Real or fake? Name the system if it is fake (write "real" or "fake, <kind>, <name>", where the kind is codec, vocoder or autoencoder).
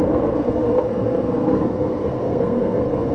fake, codec, SNAC